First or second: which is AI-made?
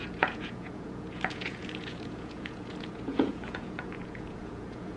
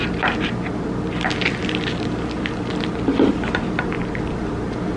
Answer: first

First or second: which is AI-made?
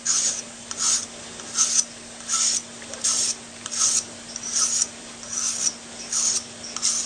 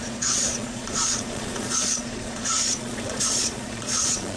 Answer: second